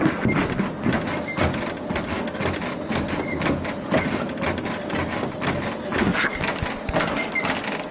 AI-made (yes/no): no